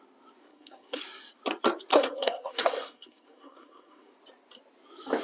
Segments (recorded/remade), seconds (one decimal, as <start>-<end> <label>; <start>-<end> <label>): 0.0-0.4 recorded; 0.4-1.0 remade; 1.0-1.9 recorded; 1.9-4.1 remade; 4.1-5.2 recorded